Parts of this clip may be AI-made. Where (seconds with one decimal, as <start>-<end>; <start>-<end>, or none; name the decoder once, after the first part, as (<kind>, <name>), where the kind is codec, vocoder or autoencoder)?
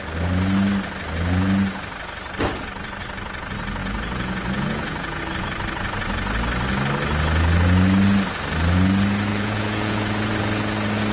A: 3.8-5.2 (vocoder, Vocos); 9.3-10.3